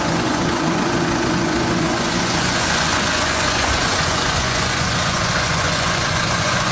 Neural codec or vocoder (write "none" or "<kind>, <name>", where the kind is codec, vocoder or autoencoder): vocoder, Vocos